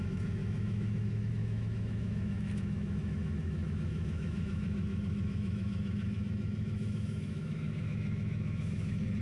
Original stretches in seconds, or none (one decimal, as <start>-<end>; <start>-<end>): none